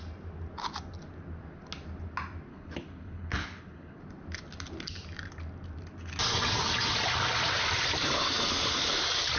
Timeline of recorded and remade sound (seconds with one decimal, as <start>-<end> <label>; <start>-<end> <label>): 0.0-2.5 recorded; 2.5-4.0 remade; 4.0-9.4 recorded